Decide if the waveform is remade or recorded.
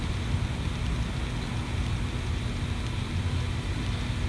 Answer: recorded